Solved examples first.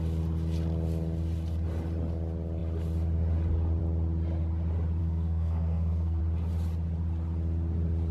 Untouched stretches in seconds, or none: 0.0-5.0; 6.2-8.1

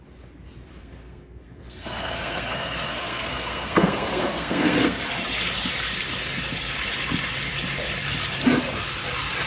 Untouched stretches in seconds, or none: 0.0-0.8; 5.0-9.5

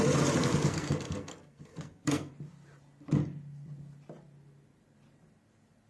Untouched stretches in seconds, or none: 0.0-0.4; 2.3-5.9

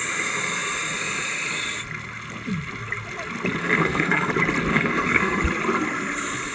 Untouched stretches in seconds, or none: 0.0-3.6; 4.3-4.7; 5.4-6.5